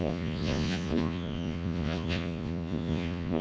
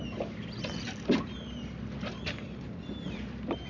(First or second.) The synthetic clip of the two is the first